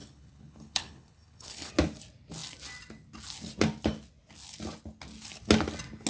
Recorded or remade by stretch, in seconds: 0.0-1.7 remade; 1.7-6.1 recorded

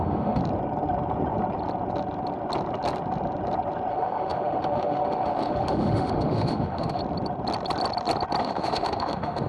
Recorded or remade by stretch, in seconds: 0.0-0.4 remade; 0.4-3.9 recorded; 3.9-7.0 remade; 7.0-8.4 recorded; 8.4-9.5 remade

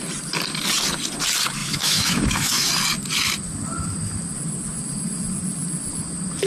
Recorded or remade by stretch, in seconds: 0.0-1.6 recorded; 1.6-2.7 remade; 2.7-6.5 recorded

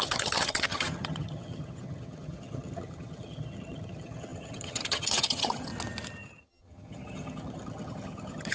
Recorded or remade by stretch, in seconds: 0.0-5.7 remade; 5.7-6.4 recorded; 6.4-8.5 remade

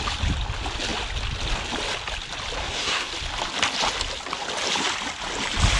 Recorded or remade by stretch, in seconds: 0.0-2.6 recorded; 2.6-3.1 remade; 3.1-5.8 recorded

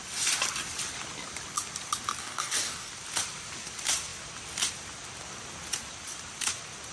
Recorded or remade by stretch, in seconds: 0.0-2.2 recorded; 2.2-2.9 remade; 2.9-6.9 recorded